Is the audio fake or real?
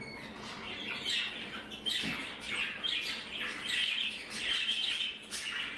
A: real